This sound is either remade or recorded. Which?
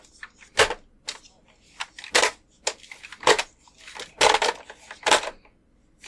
recorded